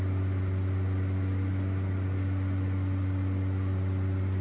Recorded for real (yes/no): yes